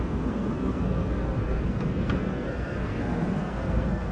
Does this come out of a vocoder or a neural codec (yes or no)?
yes